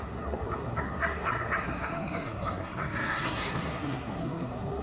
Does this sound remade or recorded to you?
remade